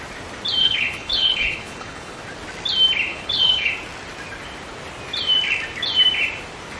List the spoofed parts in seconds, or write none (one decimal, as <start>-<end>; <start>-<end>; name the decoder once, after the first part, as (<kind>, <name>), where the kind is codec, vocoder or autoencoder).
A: 0.6-2.2 (codec, HILCodec); 3.1-3.7